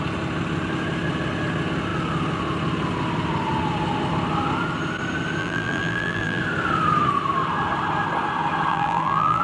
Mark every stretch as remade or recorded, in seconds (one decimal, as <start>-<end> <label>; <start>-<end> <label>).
0.0-5.4 recorded; 5.4-6.4 remade; 6.4-8.7 recorded; 8.7-9.4 remade